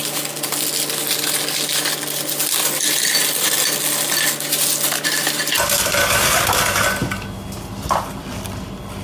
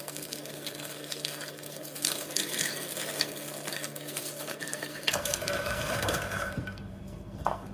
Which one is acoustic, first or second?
first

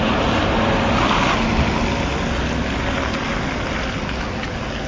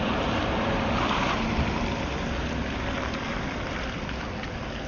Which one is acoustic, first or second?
first